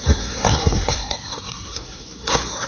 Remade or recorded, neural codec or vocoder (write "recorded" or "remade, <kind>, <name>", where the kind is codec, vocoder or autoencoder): remade, codec, SNAC